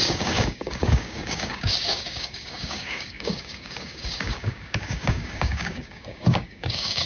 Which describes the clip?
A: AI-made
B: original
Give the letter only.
A